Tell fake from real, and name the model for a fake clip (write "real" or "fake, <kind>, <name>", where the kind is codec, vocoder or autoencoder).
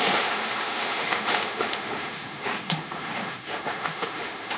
fake, autoencoder, DAC-VAE